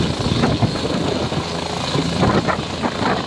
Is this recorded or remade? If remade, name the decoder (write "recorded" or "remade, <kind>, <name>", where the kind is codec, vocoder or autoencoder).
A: recorded